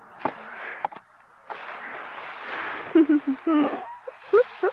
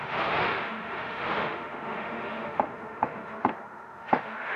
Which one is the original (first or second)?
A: first